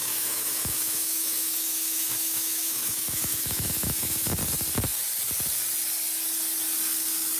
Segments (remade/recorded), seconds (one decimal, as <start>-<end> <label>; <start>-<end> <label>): 0.0-4.4 remade; 4.4-7.4 recorded